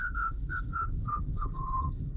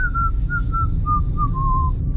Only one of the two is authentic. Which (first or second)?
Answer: second